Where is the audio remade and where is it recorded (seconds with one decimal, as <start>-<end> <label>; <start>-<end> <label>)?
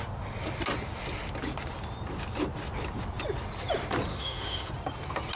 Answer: 0.0-4.1 recorded; 4.1-4.7 remade; 4.7-5.4 recorded